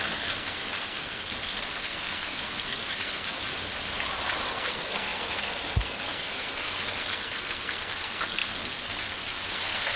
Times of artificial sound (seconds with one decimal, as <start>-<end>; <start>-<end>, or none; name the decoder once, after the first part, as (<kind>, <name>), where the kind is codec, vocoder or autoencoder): 0.0-3.4 (codec, SNAC); 4.5-10.0